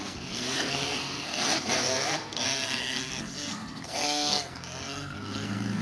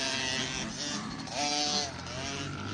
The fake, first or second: first